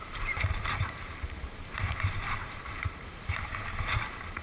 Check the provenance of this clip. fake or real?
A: fake